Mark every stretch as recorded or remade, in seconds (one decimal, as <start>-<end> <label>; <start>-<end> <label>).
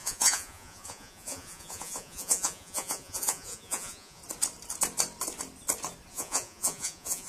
0.0-4.2 remade; 4.2-6.1 recorded; 6.1-7.3 remade